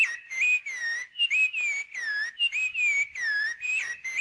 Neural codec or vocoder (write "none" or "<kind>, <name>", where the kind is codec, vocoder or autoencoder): none